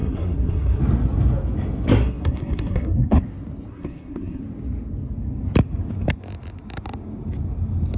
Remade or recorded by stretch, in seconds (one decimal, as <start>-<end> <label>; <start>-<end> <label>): 0.0-0.8 remade; 0.8-1.9 recorded; 1.9-3.2 remade; 3.2-3.7 recorded; 3.7-4.4 remade; 4.4-8.0 recorded